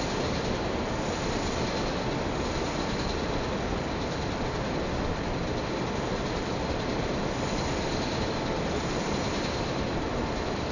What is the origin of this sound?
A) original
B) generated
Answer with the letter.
A